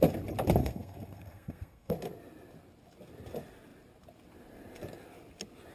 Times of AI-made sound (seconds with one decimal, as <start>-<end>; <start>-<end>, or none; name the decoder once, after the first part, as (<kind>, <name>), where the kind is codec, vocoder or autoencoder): 0.6-1.9 (codec, SNAC)